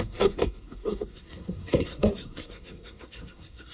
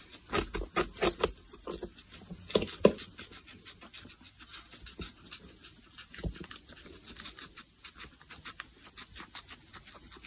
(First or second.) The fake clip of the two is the first